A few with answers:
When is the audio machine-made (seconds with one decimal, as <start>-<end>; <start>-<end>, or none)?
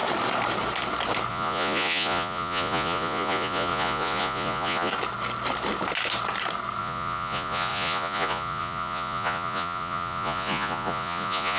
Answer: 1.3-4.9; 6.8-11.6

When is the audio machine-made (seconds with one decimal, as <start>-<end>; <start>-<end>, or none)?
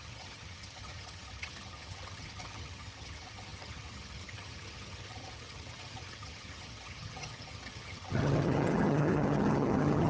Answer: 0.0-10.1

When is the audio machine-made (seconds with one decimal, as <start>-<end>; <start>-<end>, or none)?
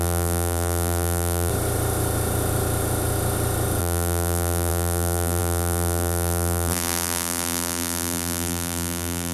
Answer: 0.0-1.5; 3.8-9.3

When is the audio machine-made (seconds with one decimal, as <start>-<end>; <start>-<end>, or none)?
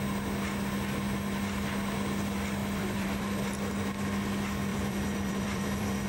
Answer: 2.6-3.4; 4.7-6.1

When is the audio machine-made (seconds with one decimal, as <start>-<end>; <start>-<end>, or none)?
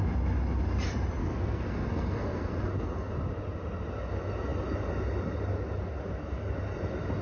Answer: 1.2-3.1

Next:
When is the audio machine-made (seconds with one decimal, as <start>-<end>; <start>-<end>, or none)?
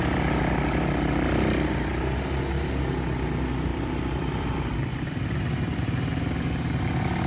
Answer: 3.7-5.5